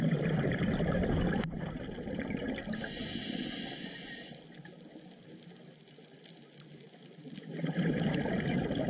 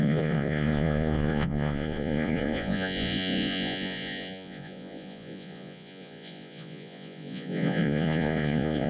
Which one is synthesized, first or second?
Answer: second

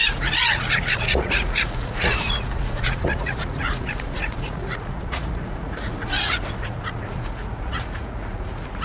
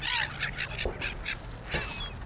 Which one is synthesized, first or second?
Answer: first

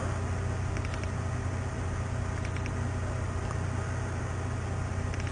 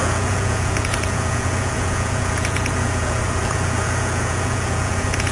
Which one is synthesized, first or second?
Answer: second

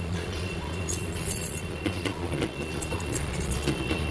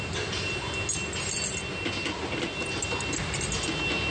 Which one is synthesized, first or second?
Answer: first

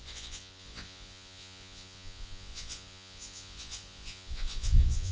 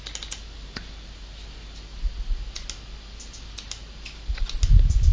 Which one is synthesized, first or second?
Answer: first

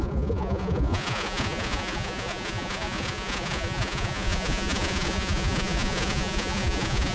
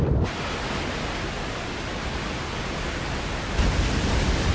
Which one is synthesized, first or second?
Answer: first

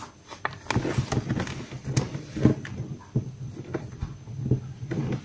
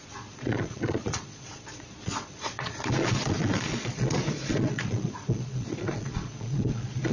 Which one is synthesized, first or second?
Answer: second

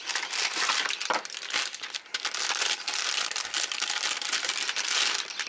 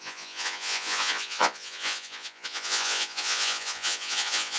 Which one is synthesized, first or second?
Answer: second